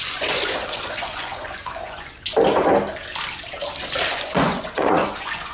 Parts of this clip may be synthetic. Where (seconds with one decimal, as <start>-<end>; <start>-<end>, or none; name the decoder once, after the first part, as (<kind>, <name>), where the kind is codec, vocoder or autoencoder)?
0.0-2.3 (vocoder, Vocos); 4.1-5.5